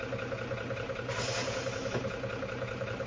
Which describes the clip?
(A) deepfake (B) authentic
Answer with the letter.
B